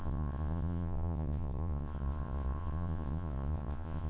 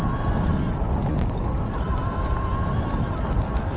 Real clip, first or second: second